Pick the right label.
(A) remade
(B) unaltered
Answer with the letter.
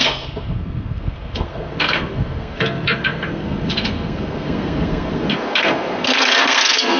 A